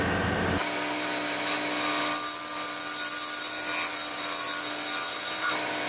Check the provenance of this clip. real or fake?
real